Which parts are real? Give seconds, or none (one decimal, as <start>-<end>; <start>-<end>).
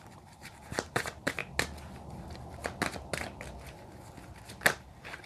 1.4-3.8; 4.3-4.8